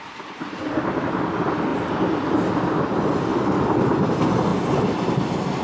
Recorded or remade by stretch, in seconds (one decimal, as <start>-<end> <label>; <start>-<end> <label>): 0.0-1.7 recorded; 1.7-2.8 remade; 2.8-3.3 recorded; 3.3-3.9 remade; 3.9-5.6 recorded